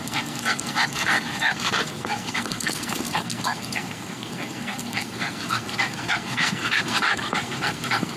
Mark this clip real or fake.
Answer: fake